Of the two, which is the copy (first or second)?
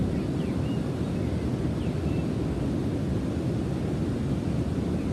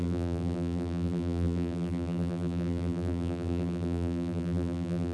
second